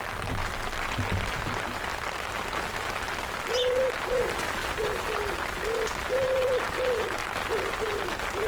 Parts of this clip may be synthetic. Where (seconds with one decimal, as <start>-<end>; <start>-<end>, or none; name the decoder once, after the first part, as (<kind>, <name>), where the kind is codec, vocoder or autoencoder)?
0.0-0.4 (vocoder, BigVGAN v2); 3.0-4.6; 6.0-7.2; 7.7-8.5